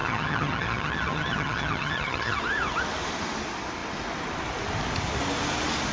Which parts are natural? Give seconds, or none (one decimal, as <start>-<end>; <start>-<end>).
2.4-5.9